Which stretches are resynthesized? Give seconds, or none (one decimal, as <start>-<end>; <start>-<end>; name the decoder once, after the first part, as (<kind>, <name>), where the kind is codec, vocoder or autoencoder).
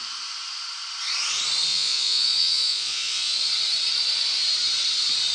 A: 1.7-3.4 (vocoder, Vocos)